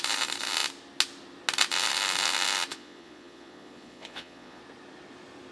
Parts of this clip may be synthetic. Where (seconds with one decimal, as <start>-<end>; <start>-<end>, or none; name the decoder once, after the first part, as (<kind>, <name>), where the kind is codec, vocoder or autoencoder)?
2.7-4.6 (vocoder, Vocos)